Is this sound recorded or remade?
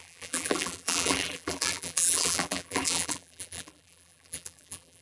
remade